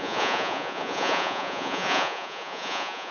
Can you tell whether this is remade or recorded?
remade